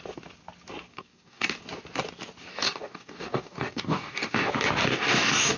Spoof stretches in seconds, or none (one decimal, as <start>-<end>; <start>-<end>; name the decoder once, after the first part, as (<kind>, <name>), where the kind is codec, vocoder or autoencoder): 0.9-1.6 (codec, DAC); 2.5-4.5; 4.9-5.6